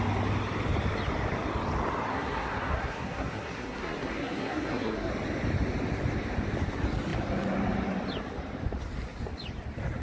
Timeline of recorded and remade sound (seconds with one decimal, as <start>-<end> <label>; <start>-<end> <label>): 0.0-2.1 recorded; 2.1-5.1 remade; 5.1-10.0 recorded